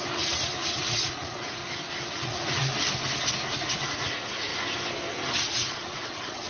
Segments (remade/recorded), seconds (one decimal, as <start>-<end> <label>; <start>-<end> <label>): 0.0-1.6 remade; 1.6-2.1 recorded; 2.1-2.7 remade; 2.7-3.3 recorded; 3.3-4.5 remade; 4.5-5.4 recorded; 5.4-6.5 remade